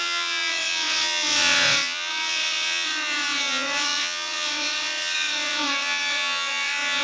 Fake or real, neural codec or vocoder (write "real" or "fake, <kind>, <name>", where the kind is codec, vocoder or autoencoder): fake, vocoder, WaveNeXt